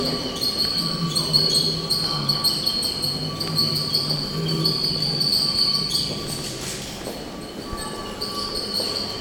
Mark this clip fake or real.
real